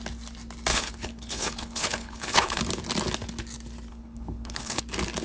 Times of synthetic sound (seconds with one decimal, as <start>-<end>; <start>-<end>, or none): 0.7-2.6; 3.9-4.8